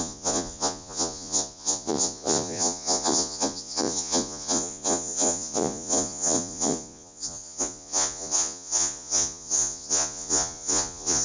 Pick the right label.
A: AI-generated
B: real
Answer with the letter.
A